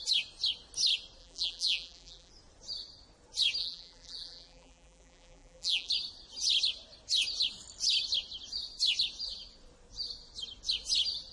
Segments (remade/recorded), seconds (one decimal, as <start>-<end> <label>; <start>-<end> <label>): 0.0-1.2 recorded; 1.2-2.3 remade; 2.3-3.6 recorded; 3.6-5.9 remade; 5.9-11.3 recorded